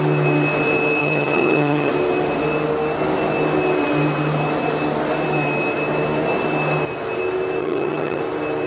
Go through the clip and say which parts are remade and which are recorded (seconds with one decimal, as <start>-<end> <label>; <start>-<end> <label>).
0.0-1.0 recorded; 1.0-1.9 remade; 1.9-7.6 recorded; 7.6-8.2 remade; 8.2-8.7 recorded